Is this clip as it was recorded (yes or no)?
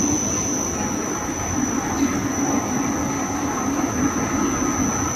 yes